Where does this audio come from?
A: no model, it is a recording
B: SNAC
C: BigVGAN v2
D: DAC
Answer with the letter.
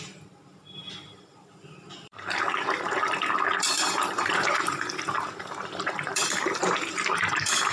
C